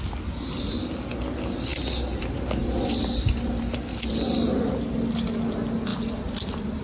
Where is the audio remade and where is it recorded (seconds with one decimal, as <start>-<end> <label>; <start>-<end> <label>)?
0.0-6.8 recorded